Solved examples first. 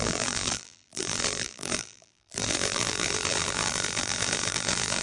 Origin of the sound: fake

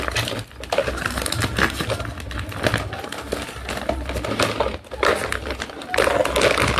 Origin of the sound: real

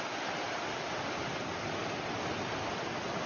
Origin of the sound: real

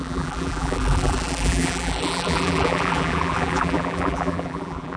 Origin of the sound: fake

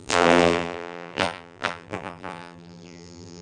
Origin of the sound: fake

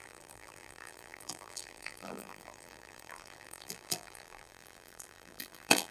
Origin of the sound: fake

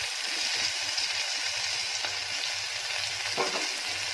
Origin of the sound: real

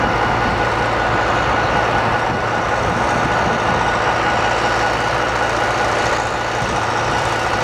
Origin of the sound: real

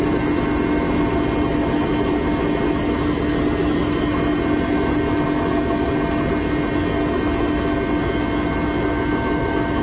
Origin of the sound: real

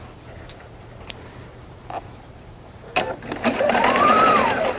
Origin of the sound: fake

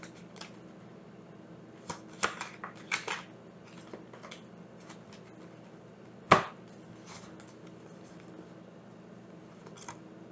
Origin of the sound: real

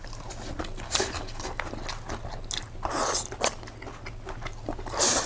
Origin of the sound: real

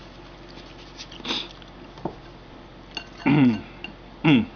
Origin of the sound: real